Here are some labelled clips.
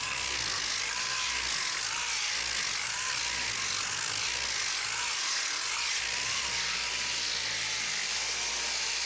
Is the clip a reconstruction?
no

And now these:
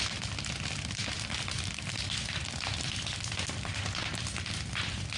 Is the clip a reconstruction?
no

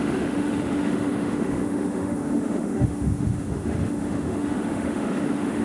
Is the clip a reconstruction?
yes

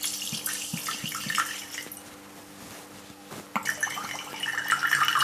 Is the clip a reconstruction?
no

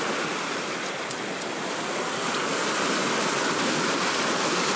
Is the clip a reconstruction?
yes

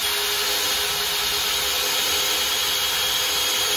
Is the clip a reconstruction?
no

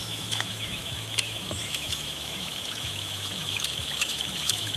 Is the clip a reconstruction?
yes